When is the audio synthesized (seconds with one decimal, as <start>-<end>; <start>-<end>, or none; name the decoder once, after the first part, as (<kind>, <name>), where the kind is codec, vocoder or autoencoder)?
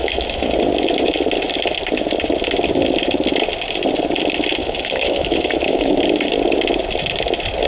0.0-0.6 (autoencoder, DAC-VAE); 4.6-5.9